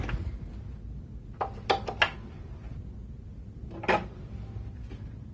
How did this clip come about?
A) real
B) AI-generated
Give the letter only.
A